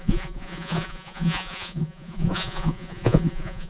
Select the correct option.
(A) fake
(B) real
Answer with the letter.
A